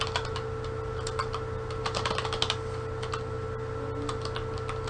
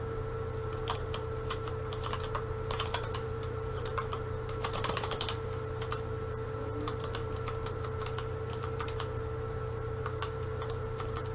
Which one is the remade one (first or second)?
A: second